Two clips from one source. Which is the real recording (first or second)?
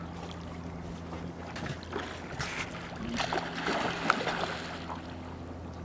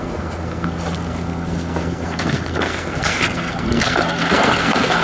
first